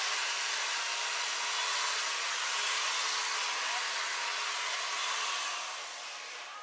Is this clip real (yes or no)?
yes